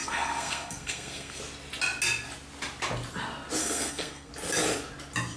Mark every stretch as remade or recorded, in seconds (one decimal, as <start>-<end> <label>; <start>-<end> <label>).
0.0-1.4 remade; 1.4-3.6 recorded; 3.6-4.3 remade; 4.3-5.4 recorded